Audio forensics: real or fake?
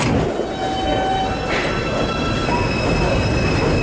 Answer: real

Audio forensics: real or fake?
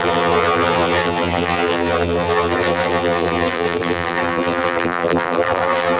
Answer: fake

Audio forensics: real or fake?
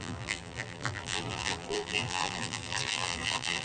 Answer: fake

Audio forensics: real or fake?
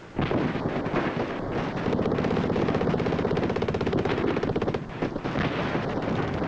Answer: real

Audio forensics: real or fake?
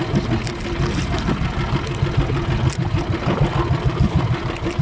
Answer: real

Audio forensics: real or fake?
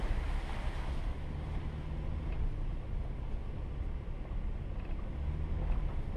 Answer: real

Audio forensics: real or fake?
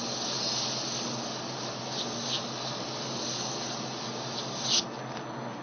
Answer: real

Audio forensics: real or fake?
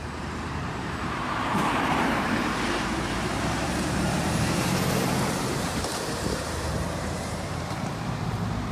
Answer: fake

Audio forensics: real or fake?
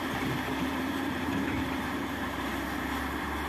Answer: fake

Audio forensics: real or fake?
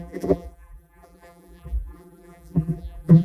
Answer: fake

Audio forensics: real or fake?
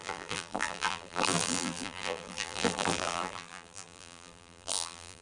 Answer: fake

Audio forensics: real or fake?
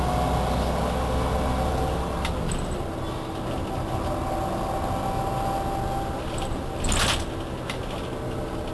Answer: real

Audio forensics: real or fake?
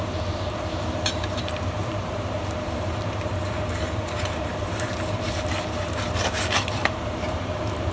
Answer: fake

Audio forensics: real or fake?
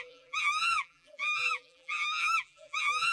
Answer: fake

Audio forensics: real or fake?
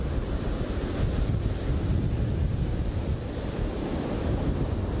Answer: real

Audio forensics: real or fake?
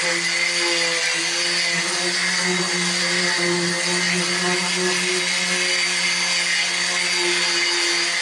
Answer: real